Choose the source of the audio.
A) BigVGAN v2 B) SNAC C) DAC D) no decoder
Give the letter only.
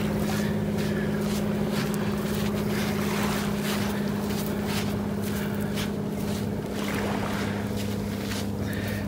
D